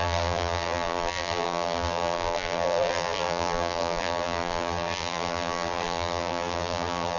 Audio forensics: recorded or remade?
remade